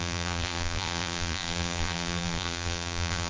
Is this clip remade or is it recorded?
remade